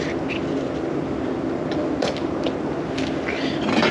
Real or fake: real